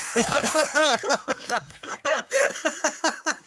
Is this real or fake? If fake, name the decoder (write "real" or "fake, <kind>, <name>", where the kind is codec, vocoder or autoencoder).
fake, codec, SNAC